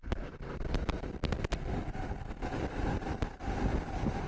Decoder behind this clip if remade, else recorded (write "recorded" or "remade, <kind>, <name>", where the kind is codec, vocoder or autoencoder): recorded